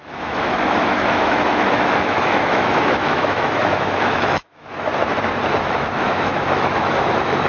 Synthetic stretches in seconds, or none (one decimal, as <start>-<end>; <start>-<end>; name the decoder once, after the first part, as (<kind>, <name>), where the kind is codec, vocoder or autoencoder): 0.0-4.9 (autoencoder, DAC-VAE); 5.6-7.5